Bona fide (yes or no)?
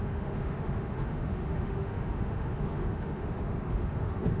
no